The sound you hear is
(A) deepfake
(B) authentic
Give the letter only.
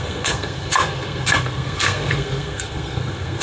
A